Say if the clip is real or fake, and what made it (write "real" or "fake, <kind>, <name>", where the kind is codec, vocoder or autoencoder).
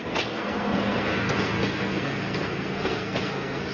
fake, codec, SNAC